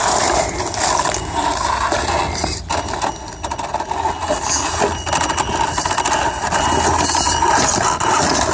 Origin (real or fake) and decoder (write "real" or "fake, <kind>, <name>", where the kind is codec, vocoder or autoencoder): real